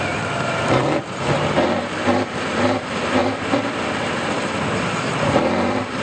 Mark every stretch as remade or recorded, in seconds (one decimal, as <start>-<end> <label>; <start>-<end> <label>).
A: 0.0-6.0 remade